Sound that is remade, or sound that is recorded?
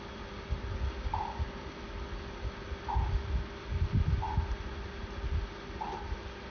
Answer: recorded